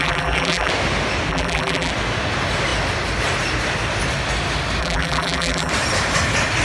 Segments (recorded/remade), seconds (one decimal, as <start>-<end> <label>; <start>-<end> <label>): 0.0-0.7 remade; 0.7-1.3 recorded; 1.3-1.9 remade; 1.9-4.8 recorded; 4.8-5.7 remade; 5.7-6.6 recorded